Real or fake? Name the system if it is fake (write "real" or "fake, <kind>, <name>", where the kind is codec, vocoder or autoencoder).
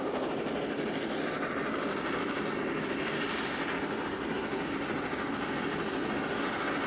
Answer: real